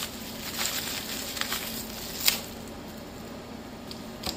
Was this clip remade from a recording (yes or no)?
no